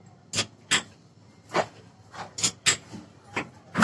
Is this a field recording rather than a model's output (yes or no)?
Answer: yes